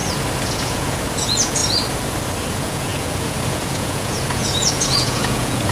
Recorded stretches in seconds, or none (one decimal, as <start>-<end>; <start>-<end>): 0.0-0.5; 1.6-2.5